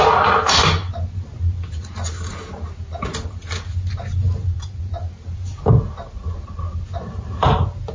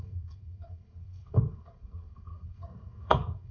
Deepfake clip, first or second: second